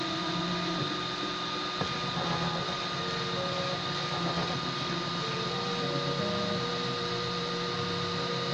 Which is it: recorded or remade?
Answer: recorded